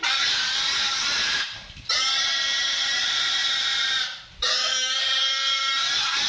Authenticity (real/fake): fake